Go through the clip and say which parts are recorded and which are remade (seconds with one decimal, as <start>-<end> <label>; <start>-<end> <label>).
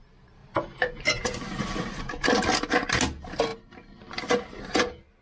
0.0-0.4 recorded; 0.4-2.0 remade; 2.0-5.2 recorded